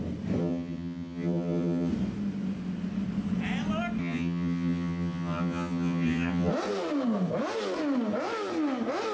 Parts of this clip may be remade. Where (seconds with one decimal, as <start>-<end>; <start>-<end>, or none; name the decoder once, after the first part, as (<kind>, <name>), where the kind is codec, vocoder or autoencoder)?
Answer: 0.4-1.9 (vocoder, HiFi-GAN); 4.0-6.5